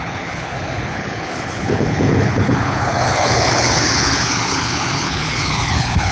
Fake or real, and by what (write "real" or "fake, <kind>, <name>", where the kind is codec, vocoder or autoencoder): fake, codec, HILCodec